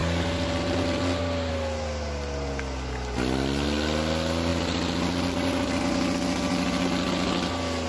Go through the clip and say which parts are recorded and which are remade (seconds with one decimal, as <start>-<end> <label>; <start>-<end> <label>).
0.0-7.9 recorded